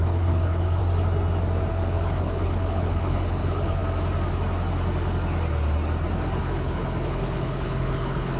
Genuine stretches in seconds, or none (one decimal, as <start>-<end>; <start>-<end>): 0.8-1.7; 3.8-6.4